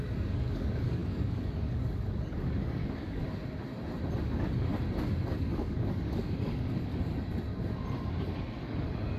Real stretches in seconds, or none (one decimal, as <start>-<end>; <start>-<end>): 3.2-4.2; 4.7-5.4; 6.9-8.6